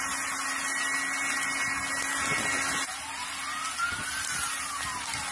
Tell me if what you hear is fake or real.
real